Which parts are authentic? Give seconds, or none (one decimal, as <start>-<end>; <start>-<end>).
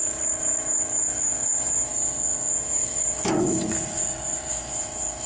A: 1.9-2.5; 4.0-4.5